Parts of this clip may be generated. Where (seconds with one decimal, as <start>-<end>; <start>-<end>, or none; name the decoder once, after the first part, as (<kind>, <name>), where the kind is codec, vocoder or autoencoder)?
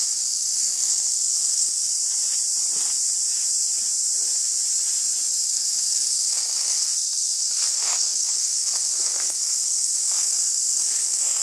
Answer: 0.0-1.9 (codec, SNAC); 5.4-11.4